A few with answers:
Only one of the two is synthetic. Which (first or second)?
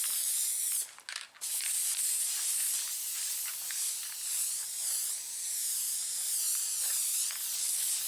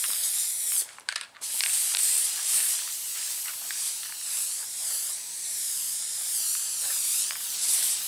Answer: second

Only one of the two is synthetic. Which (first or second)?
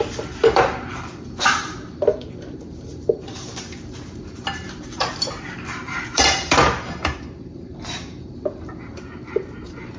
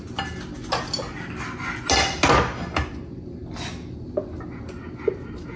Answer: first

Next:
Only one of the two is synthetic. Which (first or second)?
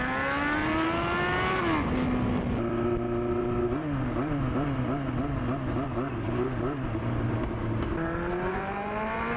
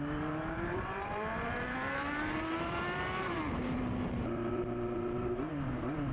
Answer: second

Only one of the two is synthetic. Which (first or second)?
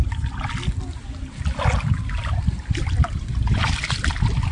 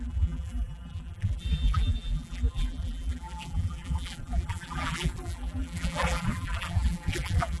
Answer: second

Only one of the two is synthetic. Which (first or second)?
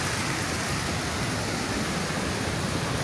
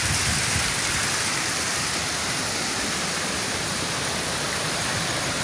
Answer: second